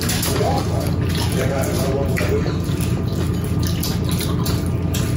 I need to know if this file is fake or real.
real